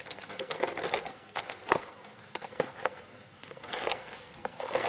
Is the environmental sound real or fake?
fake